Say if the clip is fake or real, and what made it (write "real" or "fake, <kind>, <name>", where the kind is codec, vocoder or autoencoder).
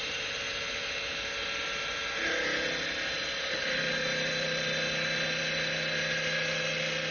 real